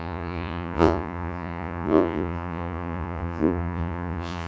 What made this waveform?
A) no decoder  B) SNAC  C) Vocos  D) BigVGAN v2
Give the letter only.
C